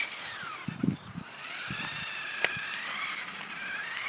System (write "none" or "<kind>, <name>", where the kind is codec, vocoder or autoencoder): none